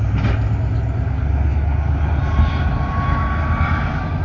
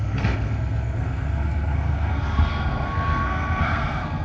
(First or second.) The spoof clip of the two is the second